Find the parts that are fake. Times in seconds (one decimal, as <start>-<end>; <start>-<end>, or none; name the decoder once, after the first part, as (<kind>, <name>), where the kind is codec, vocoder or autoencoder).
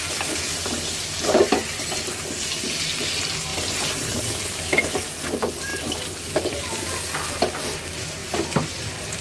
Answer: 3.5-4.2 (vocoder, BigVGAN v2); 5.7-6.6; 8.2-9.2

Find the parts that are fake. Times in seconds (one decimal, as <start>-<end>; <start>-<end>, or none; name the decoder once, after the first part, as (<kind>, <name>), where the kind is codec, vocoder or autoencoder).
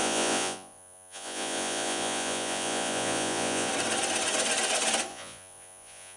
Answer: 0.0-3.7 (vocoder, Vocos); 5.1-6.2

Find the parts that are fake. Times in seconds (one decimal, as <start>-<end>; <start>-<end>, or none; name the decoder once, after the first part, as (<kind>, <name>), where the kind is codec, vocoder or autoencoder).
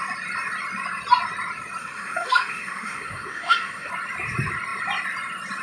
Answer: 1.8-3.9 (autoencoder, DAC-VAE)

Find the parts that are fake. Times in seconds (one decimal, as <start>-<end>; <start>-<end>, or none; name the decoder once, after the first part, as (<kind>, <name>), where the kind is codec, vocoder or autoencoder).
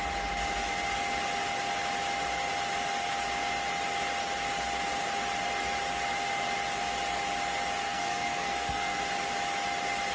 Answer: 7.8-9.0 (codec, SNAC)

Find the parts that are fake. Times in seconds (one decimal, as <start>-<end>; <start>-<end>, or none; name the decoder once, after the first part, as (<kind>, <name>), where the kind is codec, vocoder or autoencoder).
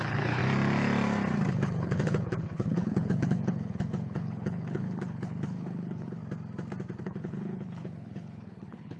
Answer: 0.0-0.4 (codec, HILCodec); 1.5-6.2; 7.0-9.0